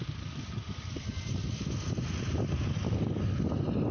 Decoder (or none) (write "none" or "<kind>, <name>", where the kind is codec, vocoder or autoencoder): none